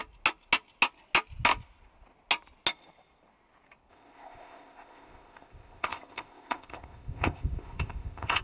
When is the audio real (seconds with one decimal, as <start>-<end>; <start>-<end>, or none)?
0.0-3.9